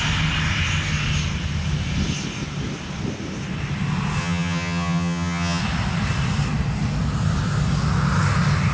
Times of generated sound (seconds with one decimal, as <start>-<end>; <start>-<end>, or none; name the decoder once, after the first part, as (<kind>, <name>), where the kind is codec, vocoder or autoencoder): 4.2-5.6 (vocoder, HiFi-GAN)